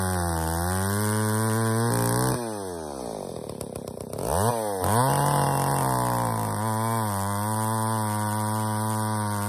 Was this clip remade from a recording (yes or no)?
no